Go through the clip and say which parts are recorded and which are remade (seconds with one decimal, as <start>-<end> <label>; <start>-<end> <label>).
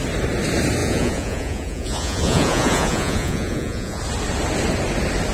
0.0-0.8 recorded; 0.8-4.0 remade; 4.0-5.3 recorded